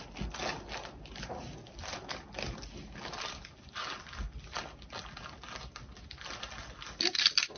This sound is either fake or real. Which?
real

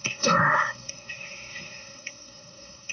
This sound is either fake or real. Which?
fake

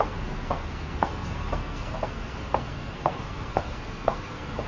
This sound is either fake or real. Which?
fake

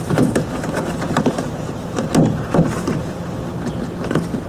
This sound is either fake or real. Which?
real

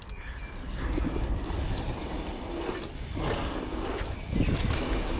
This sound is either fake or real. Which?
real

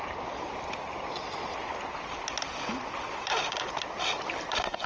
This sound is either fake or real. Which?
real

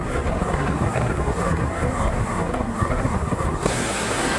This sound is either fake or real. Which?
fake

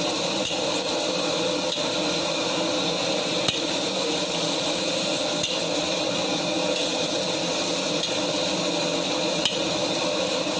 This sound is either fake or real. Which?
real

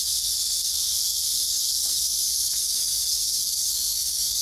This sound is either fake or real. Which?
fake